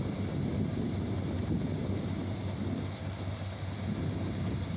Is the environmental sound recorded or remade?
recorded